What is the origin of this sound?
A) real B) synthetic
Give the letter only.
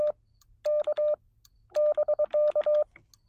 A